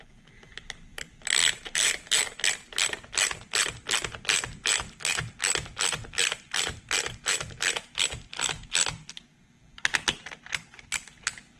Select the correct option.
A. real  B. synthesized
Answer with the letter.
A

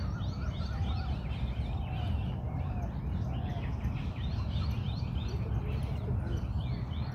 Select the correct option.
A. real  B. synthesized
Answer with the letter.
A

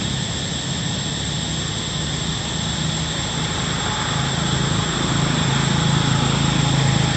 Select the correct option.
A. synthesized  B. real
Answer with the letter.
B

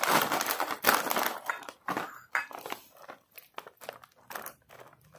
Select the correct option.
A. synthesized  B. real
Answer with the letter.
B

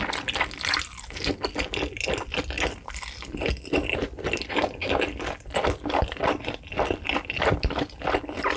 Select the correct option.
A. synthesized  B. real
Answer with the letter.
B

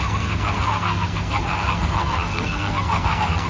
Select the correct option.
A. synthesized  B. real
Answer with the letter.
A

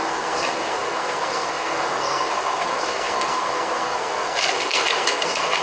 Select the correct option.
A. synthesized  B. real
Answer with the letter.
A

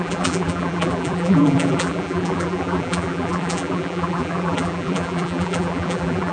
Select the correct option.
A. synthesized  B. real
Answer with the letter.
A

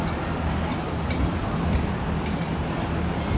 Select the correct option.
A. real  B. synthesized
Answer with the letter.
B